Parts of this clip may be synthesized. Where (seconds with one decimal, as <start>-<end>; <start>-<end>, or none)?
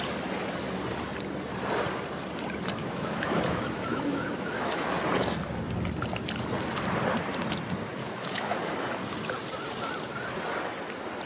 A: 2.8-4.9; 8.0-8.6